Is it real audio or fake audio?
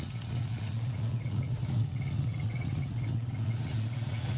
fake